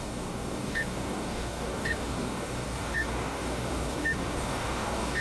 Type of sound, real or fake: fake